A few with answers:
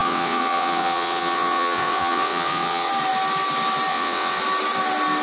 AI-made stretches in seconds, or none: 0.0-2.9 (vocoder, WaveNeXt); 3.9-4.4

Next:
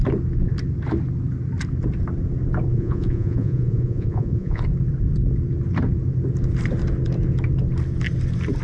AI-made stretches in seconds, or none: 2.7-4.6 (vocoder, Vocos)

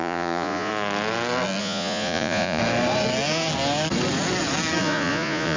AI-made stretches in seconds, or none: 0.0-0.7 (vocoder, Vocos); 1.6-2.6; 4.8-5.6

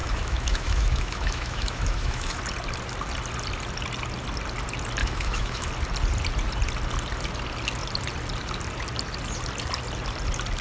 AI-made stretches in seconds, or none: 0.0-2.4 (autoencoder, DAC-VAE); 5.0-5.7